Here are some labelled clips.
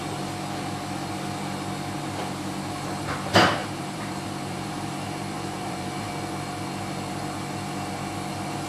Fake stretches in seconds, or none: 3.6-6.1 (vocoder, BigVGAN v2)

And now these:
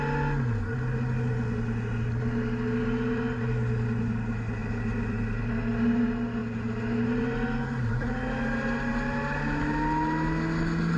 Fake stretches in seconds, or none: 4.6-5.4 (vocoder, BigVGAN v2)

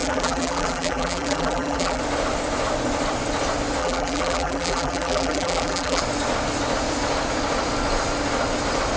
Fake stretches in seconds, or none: 0.0-2.0 (vocoder, BigVGAN v2); 3.8-6.0

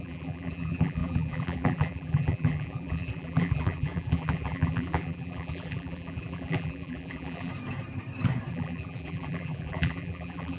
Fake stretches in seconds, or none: 0.0-7.5 (vocoder, BigVGAN v2); 8.5-10.6

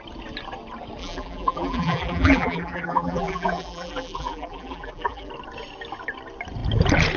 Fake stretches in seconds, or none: 1.0-5.3 (vocoder, BigVGAN v2)

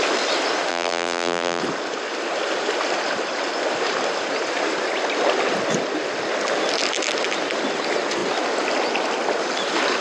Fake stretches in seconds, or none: 0.7-1.6 (vocoder, BigVGAN v2)

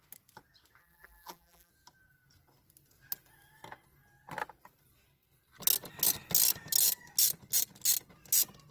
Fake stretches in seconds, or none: 0.8-1.7 (vocoder, BigVGAN v2)

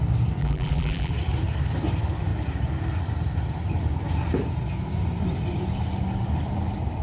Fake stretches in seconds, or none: 0.4-1.1 (vocoder, BigVGAN v2)